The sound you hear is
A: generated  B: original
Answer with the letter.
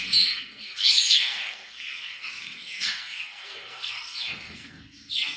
A